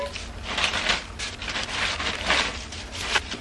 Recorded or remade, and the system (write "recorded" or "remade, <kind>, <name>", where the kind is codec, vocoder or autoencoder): recorded